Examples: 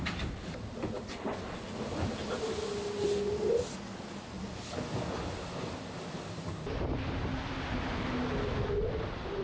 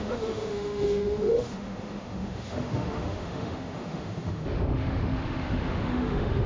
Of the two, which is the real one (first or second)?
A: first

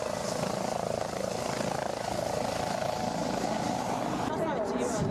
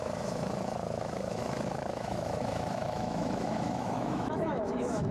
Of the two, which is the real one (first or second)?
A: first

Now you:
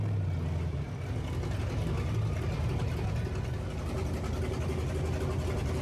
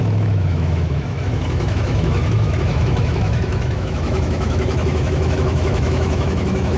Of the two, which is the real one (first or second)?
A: first